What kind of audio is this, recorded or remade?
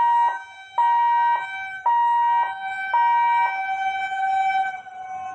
recorded